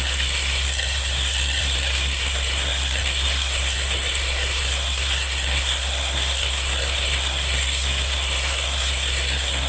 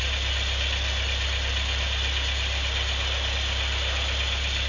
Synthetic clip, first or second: first